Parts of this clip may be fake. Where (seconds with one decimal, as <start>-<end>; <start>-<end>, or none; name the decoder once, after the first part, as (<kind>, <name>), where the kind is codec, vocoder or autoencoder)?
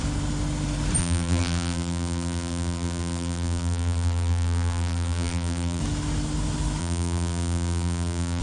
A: 1.0-5.8 (vocoder, BigVGAN v2); 6.8-8.4